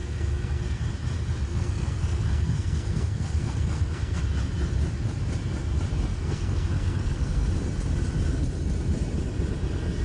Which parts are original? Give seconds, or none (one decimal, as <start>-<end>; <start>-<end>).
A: 0.8-1.5; 4.2-6.1; 7.5-10.0